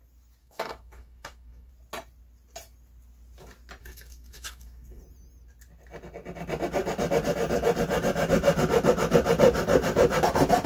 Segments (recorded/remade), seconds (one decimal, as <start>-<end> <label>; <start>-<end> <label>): 0.0-0.4 recorded; 0.4-1.7 remade; 1.7-3.8 recorded; 3.8-5.0 remade; 5.0-10.7 recorded